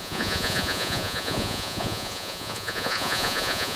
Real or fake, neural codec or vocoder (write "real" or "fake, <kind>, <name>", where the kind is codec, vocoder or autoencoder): fake, vocoder, Vocos